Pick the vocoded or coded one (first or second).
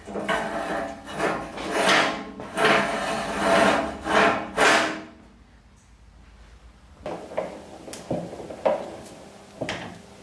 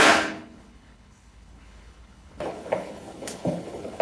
second